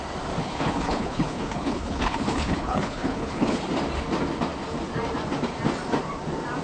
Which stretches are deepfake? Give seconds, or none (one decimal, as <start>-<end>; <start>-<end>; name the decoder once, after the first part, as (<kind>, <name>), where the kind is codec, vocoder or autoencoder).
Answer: 0.4-3.6 (codec, HILCodec)